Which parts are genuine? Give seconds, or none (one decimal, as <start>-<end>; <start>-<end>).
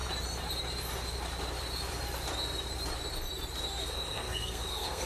0.0-3.8